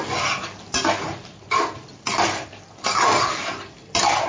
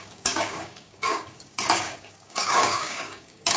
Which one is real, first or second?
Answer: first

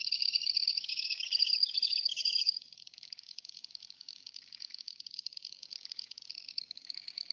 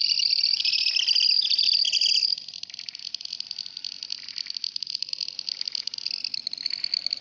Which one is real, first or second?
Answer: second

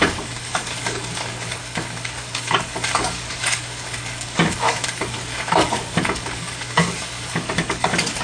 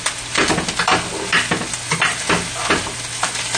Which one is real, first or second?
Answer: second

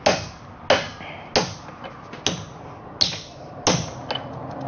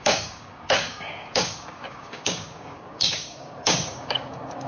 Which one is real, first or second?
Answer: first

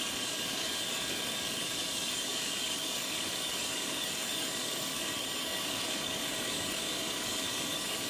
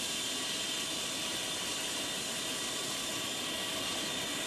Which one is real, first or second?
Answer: second